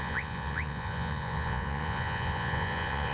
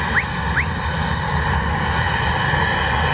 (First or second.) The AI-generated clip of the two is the first